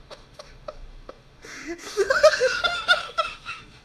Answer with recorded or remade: remade